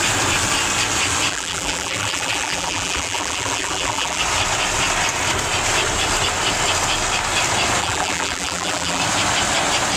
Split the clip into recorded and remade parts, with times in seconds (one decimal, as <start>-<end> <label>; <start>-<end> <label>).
0.0-1.3 recorded; 1.3-4.2 remade; 4.2-7.8 recorded; 7.8-9.0 remade; 9.0-10.0 recorded